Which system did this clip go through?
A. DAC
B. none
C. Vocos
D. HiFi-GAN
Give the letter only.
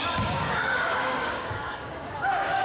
A